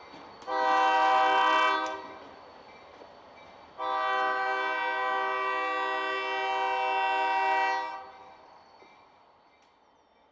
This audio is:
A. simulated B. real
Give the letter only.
B